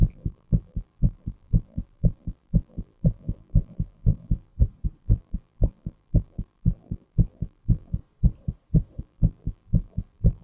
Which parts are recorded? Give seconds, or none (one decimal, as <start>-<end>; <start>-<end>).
4.5-5.0; 8.0-9.0